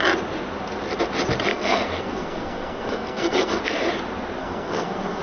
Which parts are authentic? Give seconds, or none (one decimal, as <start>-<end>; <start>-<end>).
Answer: 0.0-1.5; 3.6-4.4